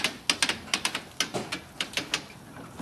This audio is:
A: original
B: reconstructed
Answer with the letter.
A